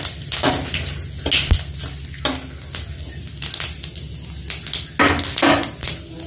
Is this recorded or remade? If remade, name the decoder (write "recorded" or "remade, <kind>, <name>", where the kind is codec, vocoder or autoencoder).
recorded